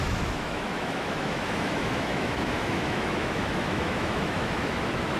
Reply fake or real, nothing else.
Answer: fake